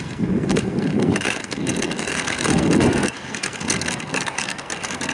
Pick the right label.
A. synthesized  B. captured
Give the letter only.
A